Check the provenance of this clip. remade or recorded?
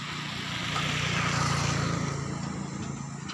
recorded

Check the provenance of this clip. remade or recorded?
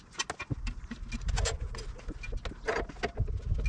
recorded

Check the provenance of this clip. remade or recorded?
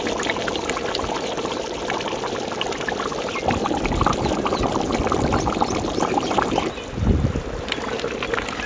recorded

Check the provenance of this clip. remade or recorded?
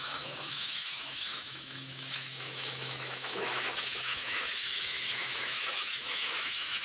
remade